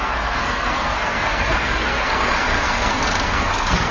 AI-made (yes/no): yes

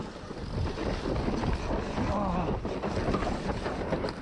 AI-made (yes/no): no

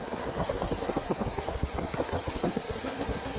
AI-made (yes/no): yes